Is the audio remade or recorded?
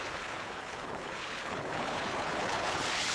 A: remade